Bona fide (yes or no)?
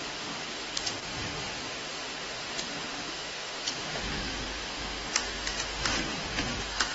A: no